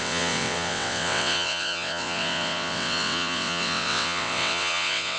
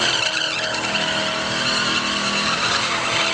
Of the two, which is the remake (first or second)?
first